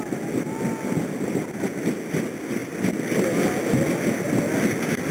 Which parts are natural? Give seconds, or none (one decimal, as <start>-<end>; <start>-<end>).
0.0-5.1